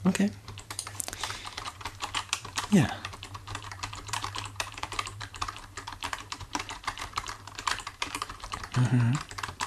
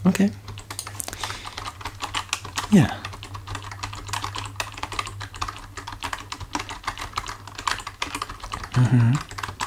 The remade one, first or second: first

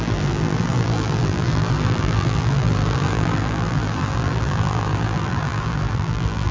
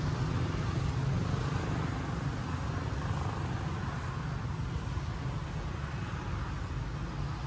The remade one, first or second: first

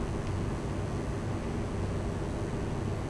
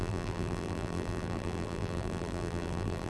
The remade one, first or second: second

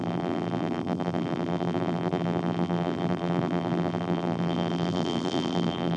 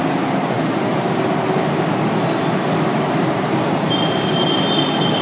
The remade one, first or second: first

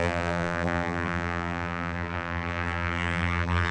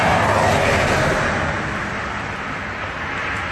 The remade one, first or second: first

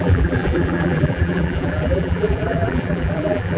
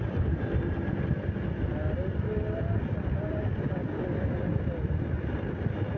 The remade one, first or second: first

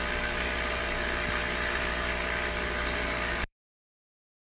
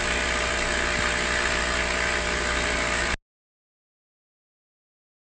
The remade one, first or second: first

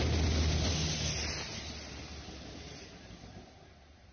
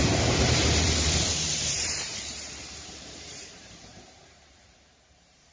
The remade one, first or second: second